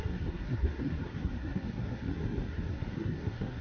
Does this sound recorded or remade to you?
remade